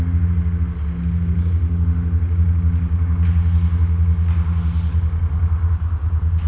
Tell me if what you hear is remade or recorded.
recorded